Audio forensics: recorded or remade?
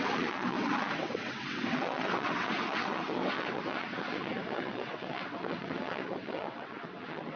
remade